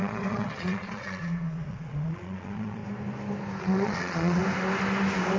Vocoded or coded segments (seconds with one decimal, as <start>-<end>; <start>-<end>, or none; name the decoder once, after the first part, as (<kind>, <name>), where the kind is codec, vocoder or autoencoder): 0.0-2.8 (vocoder, Vocos); 3.6-4.4